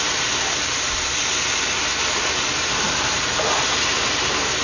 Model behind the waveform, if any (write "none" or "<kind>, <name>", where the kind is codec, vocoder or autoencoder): none